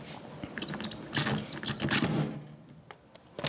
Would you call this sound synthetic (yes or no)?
no